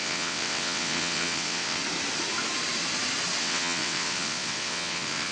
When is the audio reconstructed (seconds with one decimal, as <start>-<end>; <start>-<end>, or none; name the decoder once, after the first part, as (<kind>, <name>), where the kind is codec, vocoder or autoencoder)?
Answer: 0.0-1.8 (vocoder, WaveNeXt); 3.4-5.3